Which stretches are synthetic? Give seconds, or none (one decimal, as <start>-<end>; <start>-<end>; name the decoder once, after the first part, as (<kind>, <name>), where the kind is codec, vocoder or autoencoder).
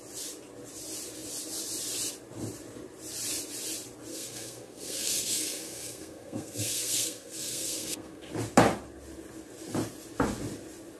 4.1-8.3 (codec, SNAC)